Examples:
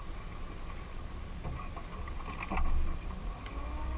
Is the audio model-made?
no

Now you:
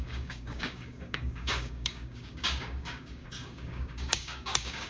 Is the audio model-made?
yes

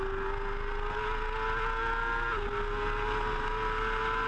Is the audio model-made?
no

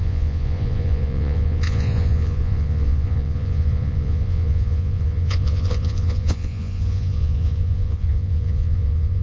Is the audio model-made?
yes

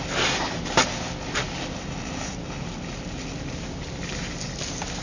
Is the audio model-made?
no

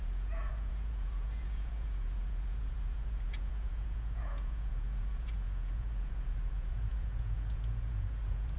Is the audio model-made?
yes